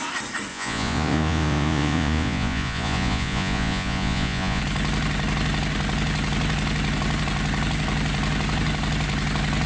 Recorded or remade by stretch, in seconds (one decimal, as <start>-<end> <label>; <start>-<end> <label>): 0.0-0.5 recorded; 0.5-4.6 remade; 4.6-9.7 recorded